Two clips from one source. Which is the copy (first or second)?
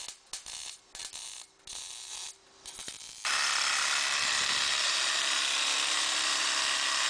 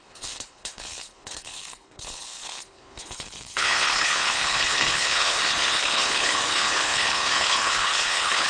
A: second